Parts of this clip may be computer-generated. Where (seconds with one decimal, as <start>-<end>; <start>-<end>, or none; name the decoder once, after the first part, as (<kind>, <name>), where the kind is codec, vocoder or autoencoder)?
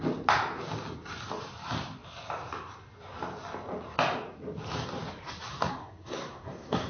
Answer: 5.5-6.9 (codec, SNAC)